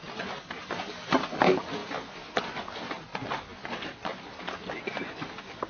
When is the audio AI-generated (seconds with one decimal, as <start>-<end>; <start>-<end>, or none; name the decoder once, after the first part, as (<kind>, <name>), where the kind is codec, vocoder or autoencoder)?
none